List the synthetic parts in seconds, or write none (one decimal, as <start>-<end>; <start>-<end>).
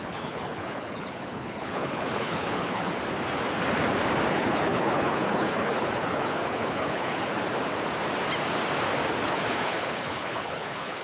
0.0-2.9; 4.3-7.3; 9.1-11.0